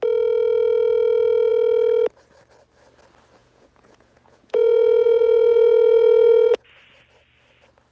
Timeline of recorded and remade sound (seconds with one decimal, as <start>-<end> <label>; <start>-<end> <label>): 0.0-3.4 recorded; 3.4-6.7 remade; 6.7-7.9 recorded